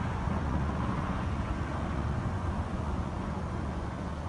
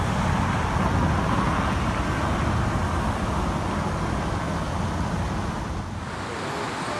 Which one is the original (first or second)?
second